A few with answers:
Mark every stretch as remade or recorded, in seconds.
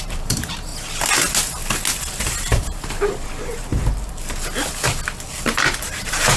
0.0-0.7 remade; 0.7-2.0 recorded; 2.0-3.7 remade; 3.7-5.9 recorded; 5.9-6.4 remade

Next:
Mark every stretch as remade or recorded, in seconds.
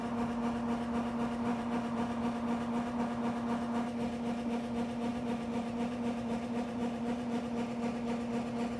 0.0-1.5 recorded; 1.5-3.0 remade; 3.0-5.1 recorded; 5.1-7.4 remade; 7.4-8.8 recorded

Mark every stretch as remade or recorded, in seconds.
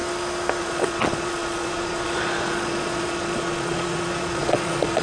0.0-0.6 recorded; 0.6-5.0 remade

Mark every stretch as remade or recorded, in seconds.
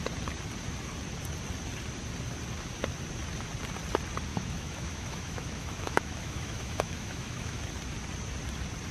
0.0-4.3 recorded; 4.3-7.6 remade; 7.6-8.9 recorded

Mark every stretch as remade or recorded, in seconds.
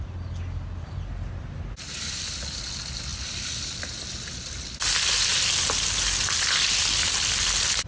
0.0-7.9 recorded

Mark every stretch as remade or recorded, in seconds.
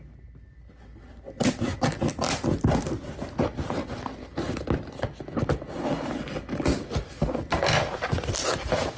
0.0-9.0 recorded